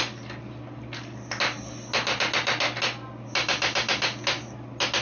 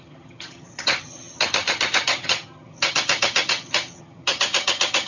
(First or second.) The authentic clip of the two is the first